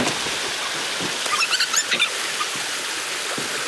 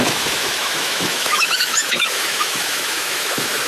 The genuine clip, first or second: first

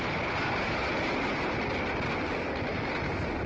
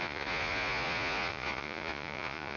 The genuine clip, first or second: first